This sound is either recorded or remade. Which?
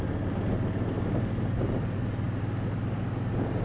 recorded